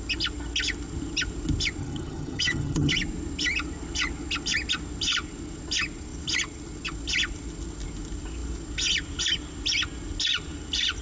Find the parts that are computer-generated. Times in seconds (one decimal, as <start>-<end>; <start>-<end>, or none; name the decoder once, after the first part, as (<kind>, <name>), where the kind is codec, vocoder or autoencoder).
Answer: 1.8-2.9 (vocoder, HiFi-GAN)